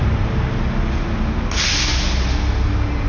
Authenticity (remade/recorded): recorded